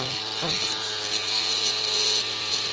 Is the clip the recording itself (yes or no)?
yes